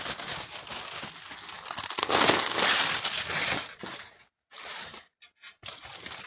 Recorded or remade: recorded